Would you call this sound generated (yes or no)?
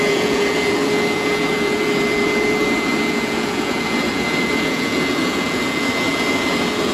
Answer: yes